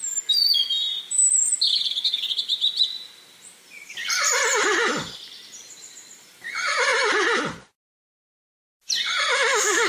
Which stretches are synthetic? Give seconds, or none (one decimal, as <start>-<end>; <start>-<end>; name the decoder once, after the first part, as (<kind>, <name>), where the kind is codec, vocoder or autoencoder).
9.3-9.9 (autoencoder, DAC-VAE)